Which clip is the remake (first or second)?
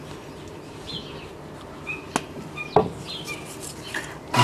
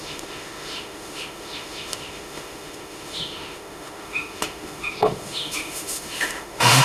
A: second